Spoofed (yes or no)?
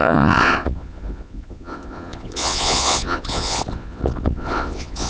yes